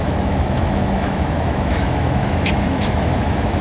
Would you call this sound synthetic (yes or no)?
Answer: yes